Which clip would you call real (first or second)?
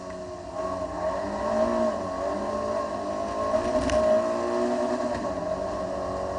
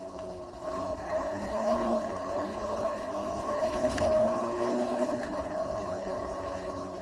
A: first